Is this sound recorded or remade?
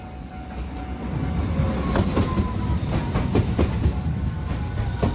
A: recorded